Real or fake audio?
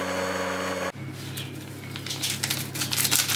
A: real